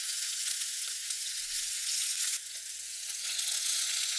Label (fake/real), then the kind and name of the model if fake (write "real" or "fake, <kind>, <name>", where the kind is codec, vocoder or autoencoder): fake, vocoder, Vocos